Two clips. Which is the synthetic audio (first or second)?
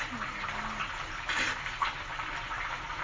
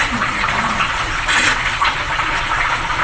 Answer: second